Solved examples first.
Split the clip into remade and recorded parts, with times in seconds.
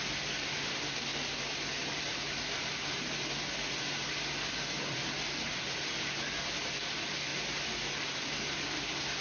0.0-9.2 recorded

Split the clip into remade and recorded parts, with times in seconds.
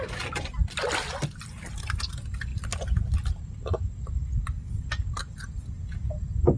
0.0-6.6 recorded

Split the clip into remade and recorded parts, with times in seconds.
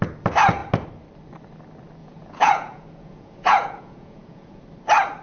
0.0-2.0 recorded; 2.0-4.6 remade; 4.6-5.2 recorded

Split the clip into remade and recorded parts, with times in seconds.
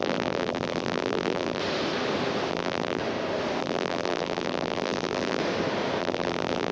0.0-1.6 remade; 1.6-2.5 recorded; 2.5-3.0 remade; 3.0-3.6 recorded; 3.6-5.4 remade; 5.4-6.0 recorded; 6.0-6.7 remade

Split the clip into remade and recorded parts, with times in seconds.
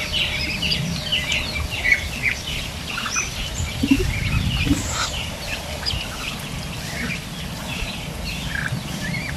0.0-1.1 remade; 1.1-2.4 recorded; 2.4-9.4 remade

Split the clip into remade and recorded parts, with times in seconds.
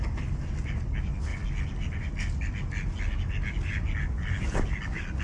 0.0-5.2 recorded